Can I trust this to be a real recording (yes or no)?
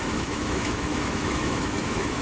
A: no